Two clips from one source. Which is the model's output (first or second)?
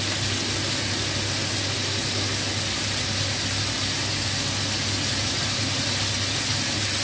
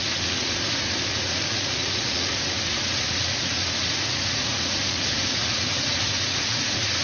second